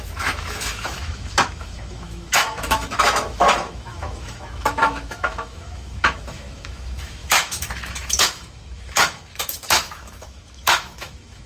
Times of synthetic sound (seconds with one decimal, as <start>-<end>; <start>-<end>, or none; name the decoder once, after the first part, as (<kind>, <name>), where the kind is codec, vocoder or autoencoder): 0.0-11.5 (autoencoder, DAC-VAE)